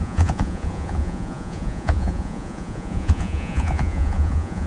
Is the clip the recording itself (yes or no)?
no